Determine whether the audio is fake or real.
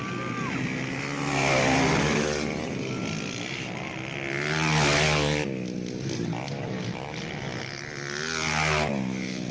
real